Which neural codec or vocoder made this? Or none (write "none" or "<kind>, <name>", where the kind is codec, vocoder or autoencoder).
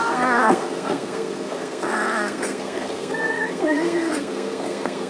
codec, SNAC